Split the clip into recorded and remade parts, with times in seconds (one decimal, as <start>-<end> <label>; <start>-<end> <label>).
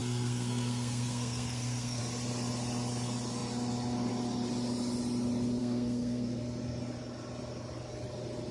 0.0-2.0 remade; 2.0-5.6 recorded; 5.6-6.4 remade; 6.4-8.5 recorded